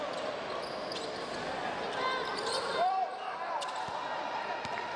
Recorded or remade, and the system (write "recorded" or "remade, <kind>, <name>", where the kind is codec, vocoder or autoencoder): recorded